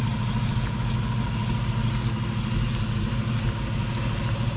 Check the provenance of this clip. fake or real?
real